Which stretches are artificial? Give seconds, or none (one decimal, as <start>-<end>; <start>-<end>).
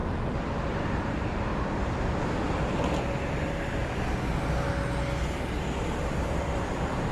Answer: 0.0-1.5; 5.8-7.1